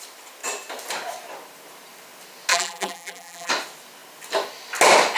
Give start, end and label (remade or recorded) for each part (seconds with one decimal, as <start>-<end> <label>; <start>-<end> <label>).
0.0-2.5 recorded; 2.5-3.5 remade; 3.5-5.2 recorded

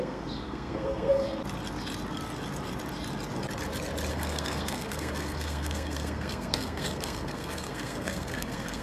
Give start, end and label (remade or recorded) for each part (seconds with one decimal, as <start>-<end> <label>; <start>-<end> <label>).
0.0-1.4 remade; 1.4-4.1 recorded; 4.1-8.8 remade

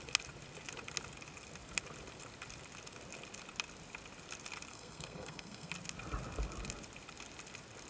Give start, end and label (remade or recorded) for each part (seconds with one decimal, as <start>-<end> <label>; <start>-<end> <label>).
0.0-4.7 recorded; 4.7-5.7 remade; 5.7-7.9 recorded

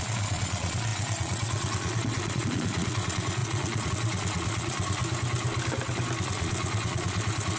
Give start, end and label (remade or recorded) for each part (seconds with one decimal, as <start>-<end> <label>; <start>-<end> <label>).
0.0-5.0 remade; 5.0-6.2 recorded; 6.2-7.6 remade

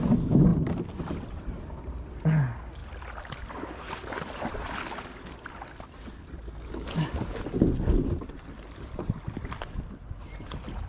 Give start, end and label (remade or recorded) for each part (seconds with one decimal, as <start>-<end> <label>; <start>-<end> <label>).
0.0-10.9 recorded